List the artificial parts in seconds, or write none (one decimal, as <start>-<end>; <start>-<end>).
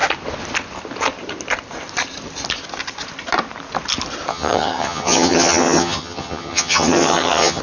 4.3-7.6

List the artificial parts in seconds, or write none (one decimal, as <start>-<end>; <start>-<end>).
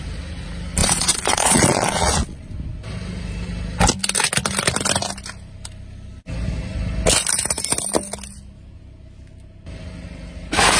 0.8-2.5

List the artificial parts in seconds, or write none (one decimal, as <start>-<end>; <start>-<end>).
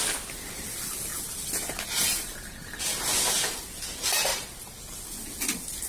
none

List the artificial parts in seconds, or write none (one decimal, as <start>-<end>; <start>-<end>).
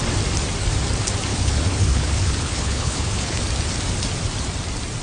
1.3-3.4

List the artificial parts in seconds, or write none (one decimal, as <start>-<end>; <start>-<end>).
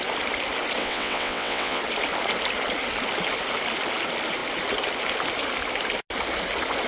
0.8-1.8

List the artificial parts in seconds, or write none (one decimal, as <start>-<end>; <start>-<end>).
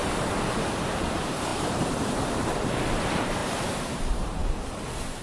0.9-4.4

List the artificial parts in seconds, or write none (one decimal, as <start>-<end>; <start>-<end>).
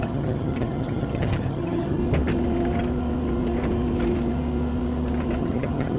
0.0-2.0; 5.4-6.0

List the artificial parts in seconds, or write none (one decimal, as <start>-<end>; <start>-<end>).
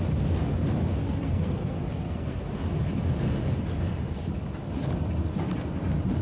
1.0-2.5